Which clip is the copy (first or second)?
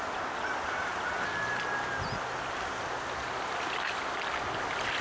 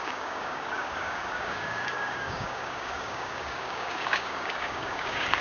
second